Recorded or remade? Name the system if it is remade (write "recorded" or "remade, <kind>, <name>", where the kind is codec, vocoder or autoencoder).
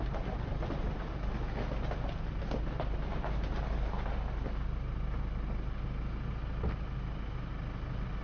recorded